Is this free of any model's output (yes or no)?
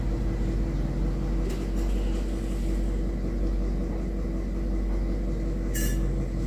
yes